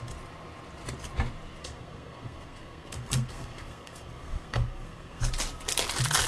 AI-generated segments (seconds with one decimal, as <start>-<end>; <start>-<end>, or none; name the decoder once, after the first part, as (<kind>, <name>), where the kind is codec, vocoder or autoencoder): 1.6-5.2 (codec, SNAC)